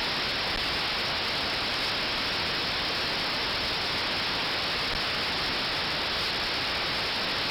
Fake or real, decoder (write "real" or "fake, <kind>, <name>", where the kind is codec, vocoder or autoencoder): real